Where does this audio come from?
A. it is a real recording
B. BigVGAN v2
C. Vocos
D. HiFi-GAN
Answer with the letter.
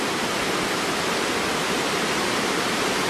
B